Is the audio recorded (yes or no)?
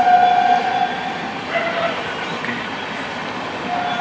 yes